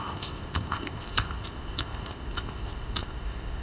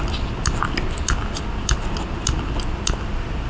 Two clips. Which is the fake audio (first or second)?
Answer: first